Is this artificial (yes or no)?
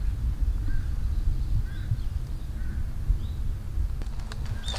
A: no